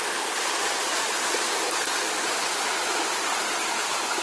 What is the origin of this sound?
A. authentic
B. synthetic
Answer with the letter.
A